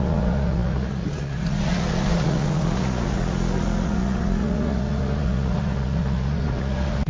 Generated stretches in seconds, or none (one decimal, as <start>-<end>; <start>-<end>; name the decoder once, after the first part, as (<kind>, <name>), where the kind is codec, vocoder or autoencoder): 0.0-7.1 (vocoder, Vocos)